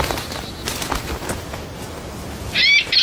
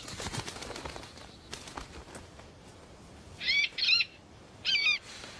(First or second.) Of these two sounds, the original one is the first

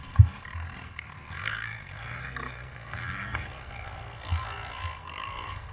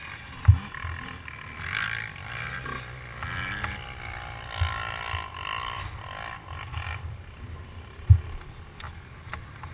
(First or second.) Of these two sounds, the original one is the second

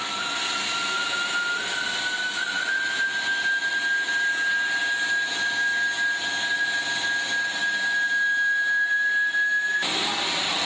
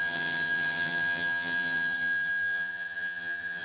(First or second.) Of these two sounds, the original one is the first